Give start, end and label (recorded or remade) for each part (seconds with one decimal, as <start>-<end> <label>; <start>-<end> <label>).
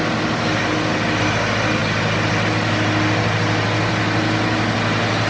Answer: 0.0-5.3 recorded